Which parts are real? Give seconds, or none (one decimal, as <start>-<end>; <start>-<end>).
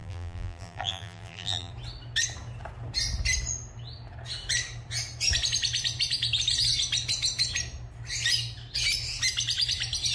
1.7-10.1